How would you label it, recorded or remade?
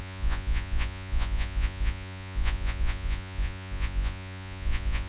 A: remade